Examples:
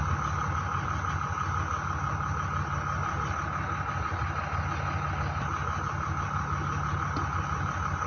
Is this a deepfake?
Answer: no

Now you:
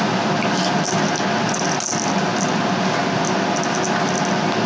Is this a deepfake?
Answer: no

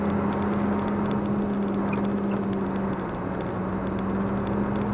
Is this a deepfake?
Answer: no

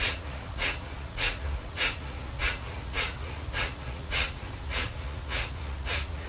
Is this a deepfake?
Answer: yes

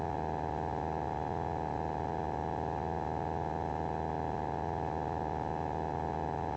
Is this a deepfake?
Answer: no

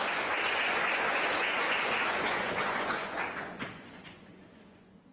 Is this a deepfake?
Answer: yes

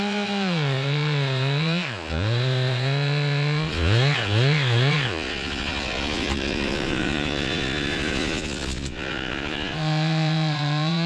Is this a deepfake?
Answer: yes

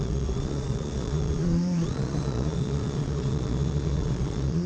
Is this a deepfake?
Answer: yes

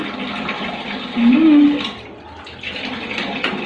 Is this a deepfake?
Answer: no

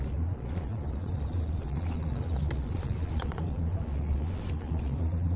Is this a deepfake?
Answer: yes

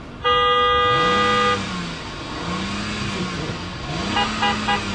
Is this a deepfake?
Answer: no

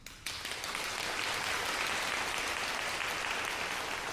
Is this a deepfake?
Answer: no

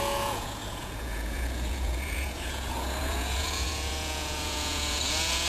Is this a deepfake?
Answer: yes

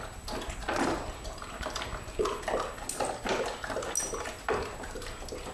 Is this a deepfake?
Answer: no